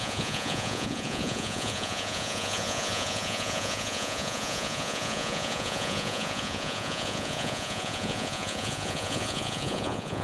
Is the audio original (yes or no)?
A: no